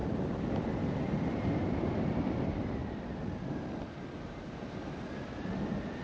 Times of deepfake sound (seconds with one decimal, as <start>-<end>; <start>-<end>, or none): none